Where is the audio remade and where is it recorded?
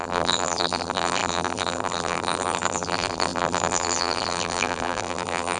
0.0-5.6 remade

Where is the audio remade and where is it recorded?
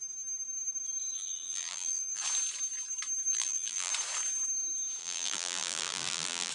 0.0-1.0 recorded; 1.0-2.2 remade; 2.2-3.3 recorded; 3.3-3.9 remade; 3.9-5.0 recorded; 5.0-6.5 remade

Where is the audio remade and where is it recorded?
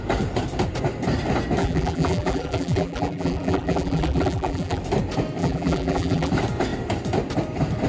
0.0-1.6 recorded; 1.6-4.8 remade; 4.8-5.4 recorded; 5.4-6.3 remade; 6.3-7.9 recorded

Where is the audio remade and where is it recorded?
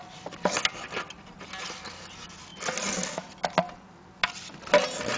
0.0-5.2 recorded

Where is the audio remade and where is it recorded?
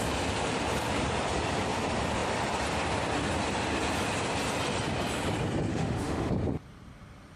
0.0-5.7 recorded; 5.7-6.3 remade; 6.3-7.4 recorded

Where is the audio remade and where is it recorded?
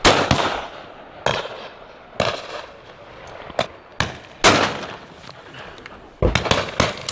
0.0-1.3 recorded; 1.3-2.2 remade; 2.2-7.1 recorded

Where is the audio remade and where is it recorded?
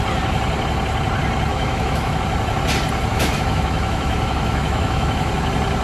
0.0-1.5 recorded; 1.5-2.2 remade; 2.2-3.1 recorded; 3.1-5.3 remade; 5.3-5.8 recorded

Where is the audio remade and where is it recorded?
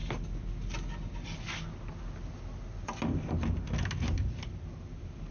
0.0-5.3 recorded